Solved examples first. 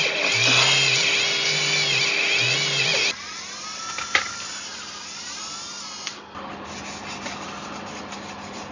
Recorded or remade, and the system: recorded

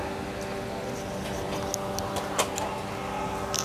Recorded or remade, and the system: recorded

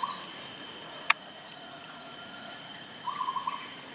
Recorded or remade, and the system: remade, vocoder, Vocos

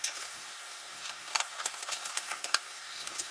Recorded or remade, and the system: remade, codec, SNAC